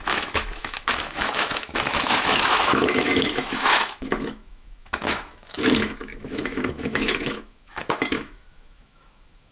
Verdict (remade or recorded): remade